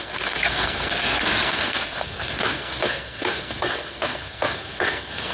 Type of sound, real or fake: fake